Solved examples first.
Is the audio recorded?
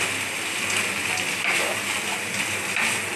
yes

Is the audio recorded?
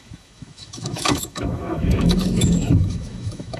no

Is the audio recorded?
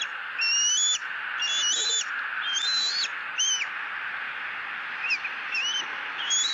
yes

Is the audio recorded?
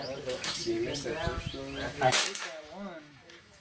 no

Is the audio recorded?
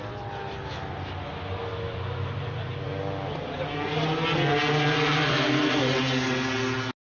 yes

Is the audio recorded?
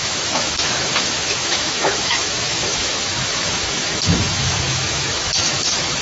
no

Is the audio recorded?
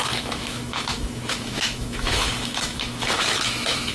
no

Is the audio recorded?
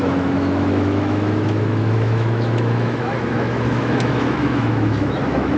no